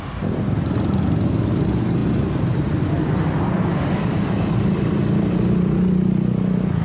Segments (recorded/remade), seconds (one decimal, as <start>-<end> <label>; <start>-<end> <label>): 0.0-6.8 recorded